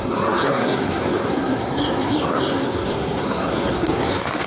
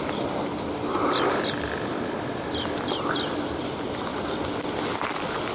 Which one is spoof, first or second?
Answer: first